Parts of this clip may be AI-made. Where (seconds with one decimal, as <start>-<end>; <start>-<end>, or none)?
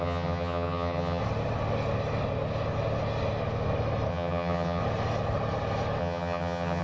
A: 0.0-1.2; 4.1-4.8; 6.0-6.8